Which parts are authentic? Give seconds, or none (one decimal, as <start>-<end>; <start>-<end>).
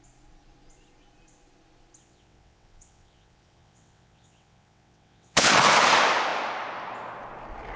0.0-2.0; 5.5-7.8